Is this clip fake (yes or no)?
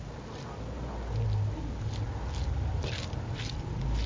no